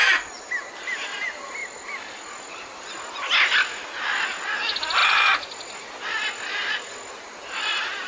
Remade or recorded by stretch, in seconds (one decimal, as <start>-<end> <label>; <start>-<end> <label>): 0.0-8.1 recorded

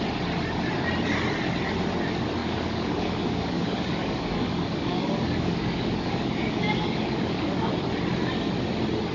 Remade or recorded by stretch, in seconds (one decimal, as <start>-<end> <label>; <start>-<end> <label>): 0.0-2.4 recorded; 2.4-7.7 remade; 7.7-9.1 recorded

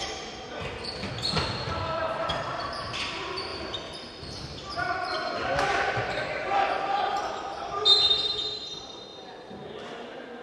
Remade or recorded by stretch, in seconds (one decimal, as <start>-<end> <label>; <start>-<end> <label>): 0.0-9.1 remade; 9.1-9.7 recorded; 9.7-10.4 remade